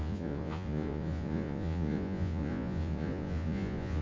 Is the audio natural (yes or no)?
no